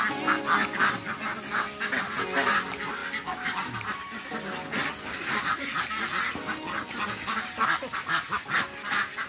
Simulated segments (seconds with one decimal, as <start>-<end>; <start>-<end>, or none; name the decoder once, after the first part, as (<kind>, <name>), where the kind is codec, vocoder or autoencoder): none